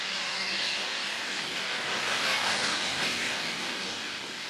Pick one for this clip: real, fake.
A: fake